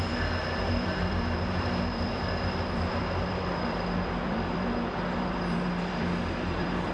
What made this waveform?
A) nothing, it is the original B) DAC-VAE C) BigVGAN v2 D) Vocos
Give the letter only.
C